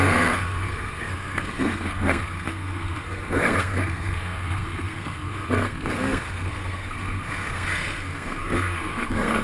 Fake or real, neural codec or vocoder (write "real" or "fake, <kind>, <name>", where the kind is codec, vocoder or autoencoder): fake, codec, SNAC